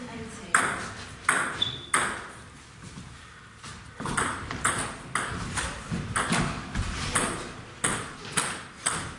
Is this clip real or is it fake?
real